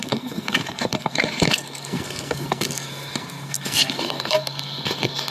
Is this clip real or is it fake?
fake